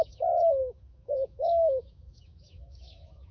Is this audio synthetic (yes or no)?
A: yes